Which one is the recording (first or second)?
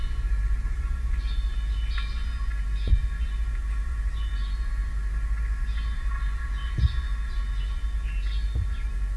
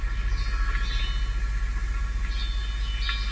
second